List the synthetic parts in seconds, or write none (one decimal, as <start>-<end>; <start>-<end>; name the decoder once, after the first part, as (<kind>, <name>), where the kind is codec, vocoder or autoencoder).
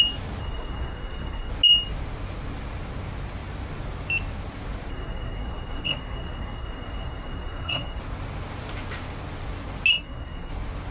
0.4-1.5 (codec, SNAC); 4.9-8.0; 9.9-10.5